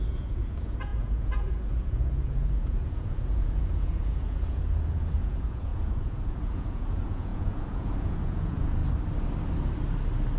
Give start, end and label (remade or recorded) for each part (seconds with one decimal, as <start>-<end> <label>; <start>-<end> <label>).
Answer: 0.0-8.8 remade; 8.8-10.4 recorded